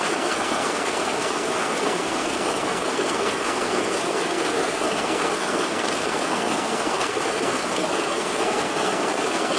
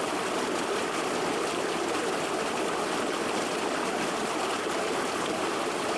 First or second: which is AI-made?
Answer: first